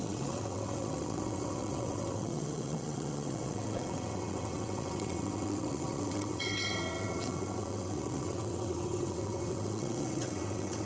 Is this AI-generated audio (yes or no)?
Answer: yes